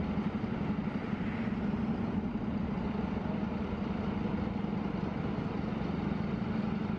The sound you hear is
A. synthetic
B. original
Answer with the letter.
B